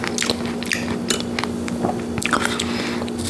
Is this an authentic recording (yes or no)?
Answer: yes